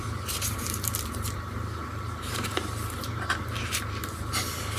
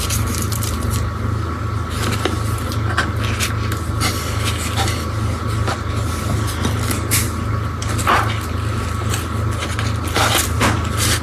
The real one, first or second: second